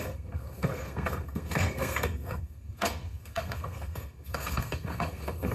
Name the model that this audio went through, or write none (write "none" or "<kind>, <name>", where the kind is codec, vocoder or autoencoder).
codec, SNAC